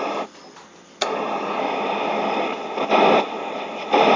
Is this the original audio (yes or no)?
yes